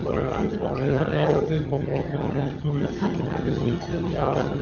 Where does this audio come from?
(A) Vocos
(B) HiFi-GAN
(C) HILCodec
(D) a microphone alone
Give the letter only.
B